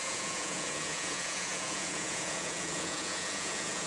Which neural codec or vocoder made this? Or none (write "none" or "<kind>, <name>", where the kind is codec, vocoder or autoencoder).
vocoder, Vocos